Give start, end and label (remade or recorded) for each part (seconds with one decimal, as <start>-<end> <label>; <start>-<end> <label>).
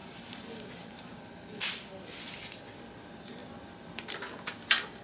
0.0-1.2 remade; 1.2-5.0 recorded